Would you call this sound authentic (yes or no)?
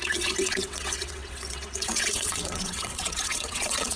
no